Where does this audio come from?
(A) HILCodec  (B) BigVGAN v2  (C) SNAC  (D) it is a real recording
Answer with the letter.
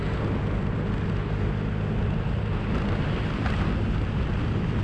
D